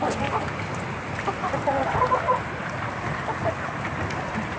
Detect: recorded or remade recorded